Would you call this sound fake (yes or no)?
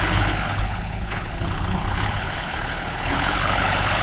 yes